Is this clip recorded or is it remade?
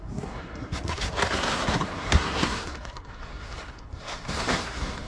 remade